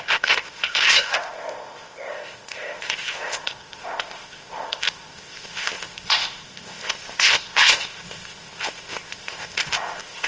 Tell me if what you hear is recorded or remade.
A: remade